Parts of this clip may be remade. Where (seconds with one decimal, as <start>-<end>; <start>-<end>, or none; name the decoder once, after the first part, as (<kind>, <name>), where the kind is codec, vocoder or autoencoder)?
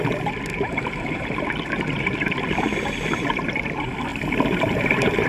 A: 0.5-3.2 (vocoder, BigVGAN v2); 4.1-5.3